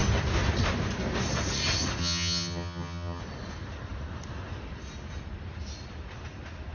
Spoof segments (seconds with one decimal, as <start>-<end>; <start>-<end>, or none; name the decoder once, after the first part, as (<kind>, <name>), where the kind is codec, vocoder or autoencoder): 2.0-3.2 (vocoder, HiFi-GAN)